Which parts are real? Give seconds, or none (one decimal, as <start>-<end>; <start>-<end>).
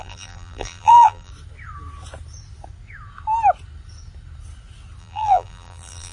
1.3-5.0